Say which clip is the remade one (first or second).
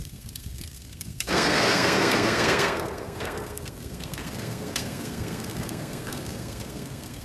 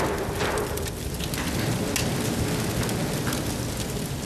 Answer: first